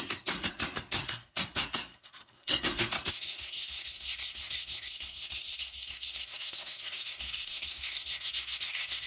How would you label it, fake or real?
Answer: fake